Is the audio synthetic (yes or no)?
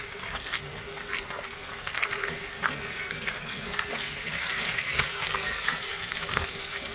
yes